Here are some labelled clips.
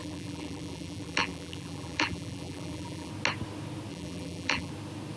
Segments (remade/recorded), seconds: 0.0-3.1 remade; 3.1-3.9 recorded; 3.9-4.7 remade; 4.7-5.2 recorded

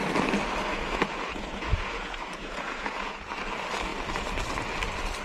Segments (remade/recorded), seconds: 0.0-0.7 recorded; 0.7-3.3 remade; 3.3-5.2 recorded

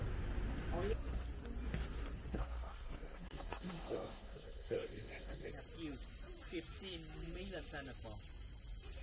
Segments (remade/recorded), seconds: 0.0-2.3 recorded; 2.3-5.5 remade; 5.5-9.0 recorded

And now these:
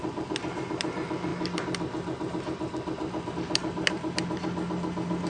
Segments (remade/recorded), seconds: 0.0-5.3 recorded

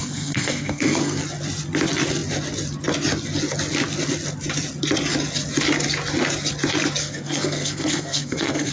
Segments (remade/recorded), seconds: 0.0-1.2 remade; 1.2-7.0 recorded; 7.0-8.7 remade

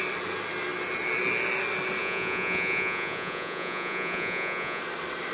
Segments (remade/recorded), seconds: 0.0-2.0 recorded; 2.0-4.8 remade; 4.8-5.3 recorded

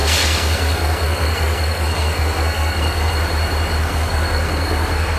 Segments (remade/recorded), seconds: 0.0-3.1 remade; 3.1-3.8 recorded; 3.8-5.2 remade